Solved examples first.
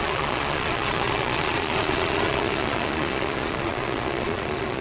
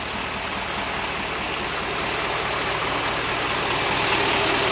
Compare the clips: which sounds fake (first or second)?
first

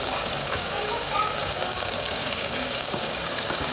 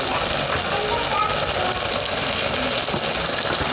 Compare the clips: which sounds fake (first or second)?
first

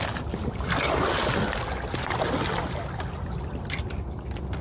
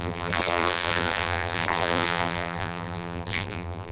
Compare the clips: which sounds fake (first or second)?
second